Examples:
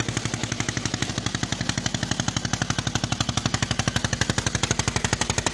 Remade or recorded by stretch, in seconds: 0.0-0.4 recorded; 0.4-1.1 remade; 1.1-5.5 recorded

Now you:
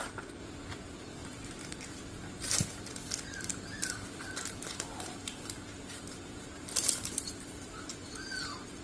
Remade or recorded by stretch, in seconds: 0.0-1.2 recorded; 1.2-2.8 remade; 2.8-3.5 recorded; 3.5-7.9 remade; 7.9-8.8 recorded

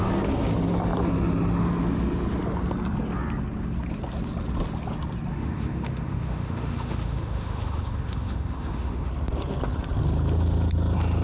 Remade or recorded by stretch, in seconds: 0.0-5.3 recorded; 5.3-9.1 remade; 9.1-11.2 recorded

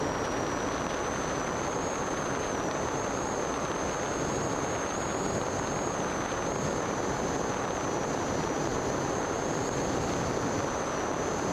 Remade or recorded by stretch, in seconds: 0.0-11.5 recorded

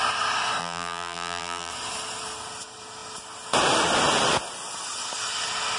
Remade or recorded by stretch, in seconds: 0.0-0.6 recorded; 0.6-1.7 remade; 1.7-5.8 recorded

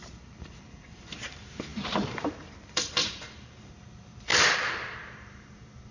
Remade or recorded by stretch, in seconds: 0.0-4.3 remade; 4.3-5.2 recorded; 5.2-5.9 remade

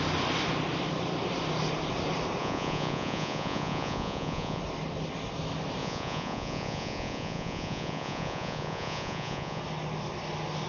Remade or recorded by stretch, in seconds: 0.0-2.4 recorded; 2.4-4.6 remade; 4.6-5.8 recorded; 5.8-9.6 remade; 9.6-10.7 recorded

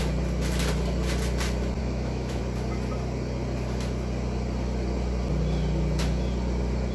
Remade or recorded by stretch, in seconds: 0.0-1.8 recorded; 1.8-2.4 remade; 2.4-6.9 recorded